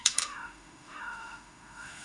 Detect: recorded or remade remade